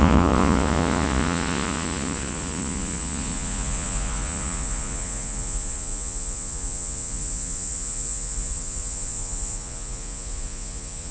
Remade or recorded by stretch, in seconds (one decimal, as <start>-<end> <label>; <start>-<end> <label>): 0.0-11.1 remade